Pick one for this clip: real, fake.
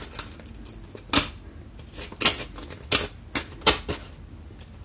real